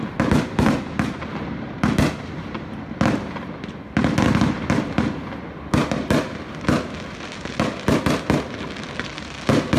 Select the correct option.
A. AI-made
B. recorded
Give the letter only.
B